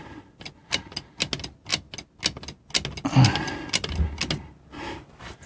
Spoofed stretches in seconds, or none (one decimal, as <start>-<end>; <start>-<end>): none